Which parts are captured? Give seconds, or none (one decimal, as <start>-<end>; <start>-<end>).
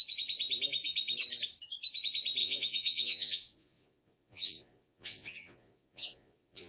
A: 0.0-2.4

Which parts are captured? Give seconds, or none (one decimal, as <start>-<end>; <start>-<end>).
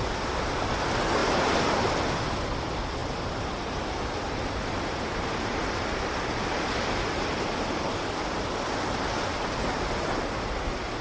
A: 0.0-11.0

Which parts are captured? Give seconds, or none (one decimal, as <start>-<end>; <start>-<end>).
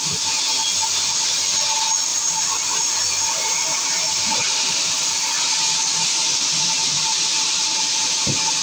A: 0.0-2.1; 5.1-6.8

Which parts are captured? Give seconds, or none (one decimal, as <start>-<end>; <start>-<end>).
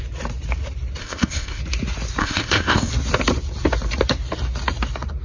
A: 0.0-1.0; 1.6-2.2; 2.9-5.2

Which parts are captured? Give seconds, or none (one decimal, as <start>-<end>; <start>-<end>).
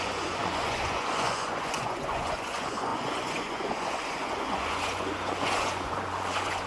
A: none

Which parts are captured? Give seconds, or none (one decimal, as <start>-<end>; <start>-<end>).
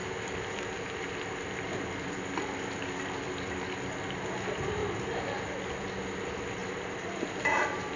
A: 0.0-4.8; 5.4-6.6